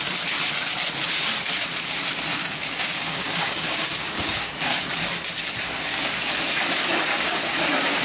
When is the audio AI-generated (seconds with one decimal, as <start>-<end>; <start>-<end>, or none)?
2.4-4.5; 7.1-8.0